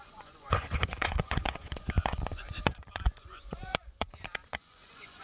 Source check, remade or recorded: remade